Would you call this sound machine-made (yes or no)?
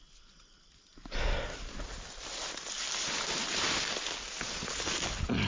no